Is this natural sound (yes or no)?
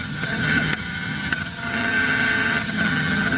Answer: no